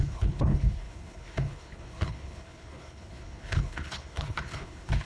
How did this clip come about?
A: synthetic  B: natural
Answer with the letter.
A